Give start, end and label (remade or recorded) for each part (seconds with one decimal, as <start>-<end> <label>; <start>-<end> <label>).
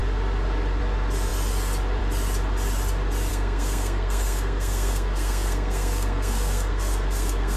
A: 0.0-3.3 recorded; 3.3-7.6 remade